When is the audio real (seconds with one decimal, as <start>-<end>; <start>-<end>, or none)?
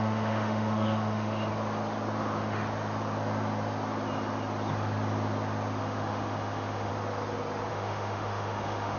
1.5-2.2; 2.6-5.8; 6.9-7.7